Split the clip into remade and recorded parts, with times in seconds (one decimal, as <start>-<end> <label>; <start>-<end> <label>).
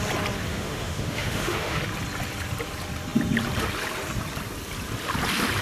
0.0-0.5 recorded; 0.5-1.8 remade; 1.8-5.6 recorded